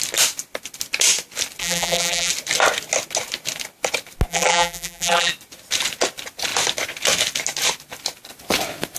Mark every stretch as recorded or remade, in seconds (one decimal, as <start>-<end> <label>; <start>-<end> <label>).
0.0-1.6 recorded; 1.6-2.3 remade; 2.3-4.3 recorded; 4.3-5.3 remade; 5.3-9.0 recorded